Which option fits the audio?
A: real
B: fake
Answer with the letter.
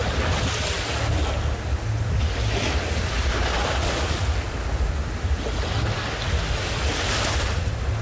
A